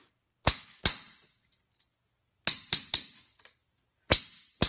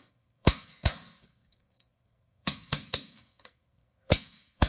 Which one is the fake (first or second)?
second